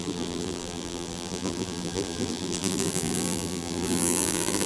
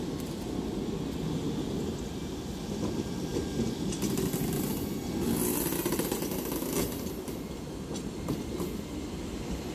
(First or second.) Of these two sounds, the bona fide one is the second